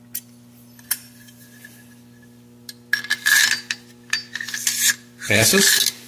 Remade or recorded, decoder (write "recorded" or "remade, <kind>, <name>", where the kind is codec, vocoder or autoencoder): recorded